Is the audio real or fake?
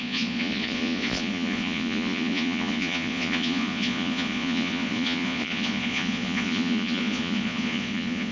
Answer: fake